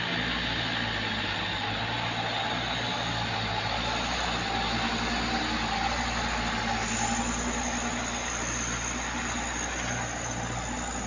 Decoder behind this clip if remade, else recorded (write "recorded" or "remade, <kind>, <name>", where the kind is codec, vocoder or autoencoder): recorded